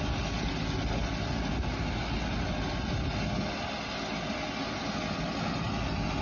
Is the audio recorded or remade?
recorded